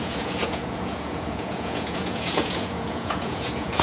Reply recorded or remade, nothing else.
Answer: remade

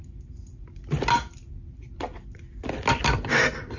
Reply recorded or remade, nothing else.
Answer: recorded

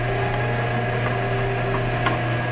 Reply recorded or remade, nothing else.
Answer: recorded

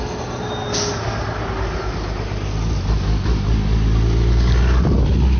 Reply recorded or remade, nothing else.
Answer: recorded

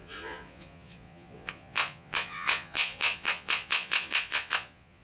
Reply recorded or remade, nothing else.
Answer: remade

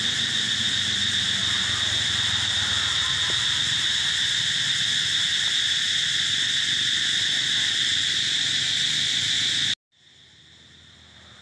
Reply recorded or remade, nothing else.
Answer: recorded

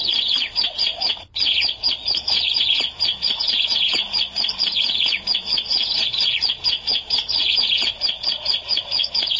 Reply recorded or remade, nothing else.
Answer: remade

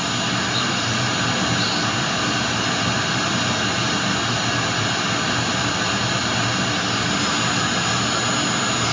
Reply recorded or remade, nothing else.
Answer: recorded